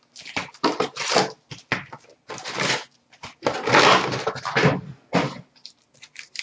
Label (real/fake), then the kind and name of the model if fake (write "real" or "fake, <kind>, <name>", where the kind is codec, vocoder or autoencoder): real